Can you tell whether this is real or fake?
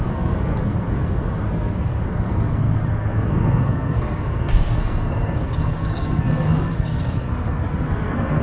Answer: fake